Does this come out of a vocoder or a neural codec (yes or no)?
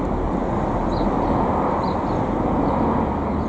no